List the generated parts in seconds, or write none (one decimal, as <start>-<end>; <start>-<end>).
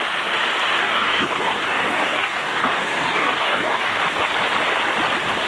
0.8-4.0